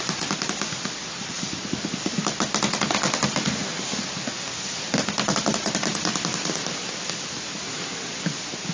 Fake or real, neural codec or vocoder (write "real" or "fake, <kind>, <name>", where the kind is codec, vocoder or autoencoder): real